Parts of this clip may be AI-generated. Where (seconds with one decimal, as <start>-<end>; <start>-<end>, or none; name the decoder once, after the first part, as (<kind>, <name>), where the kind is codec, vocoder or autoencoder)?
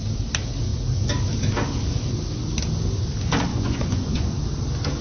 3.5-4.3 (vocoder, Vocos)